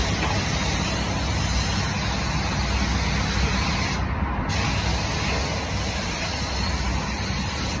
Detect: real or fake real